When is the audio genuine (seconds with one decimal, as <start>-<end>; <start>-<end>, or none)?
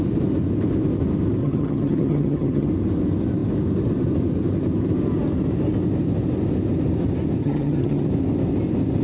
0.0-1.4; 2.7-7.4; 8.1-9.0